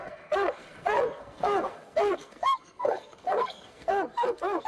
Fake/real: fake